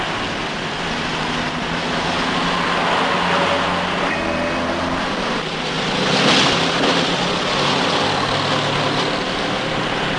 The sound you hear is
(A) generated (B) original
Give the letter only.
B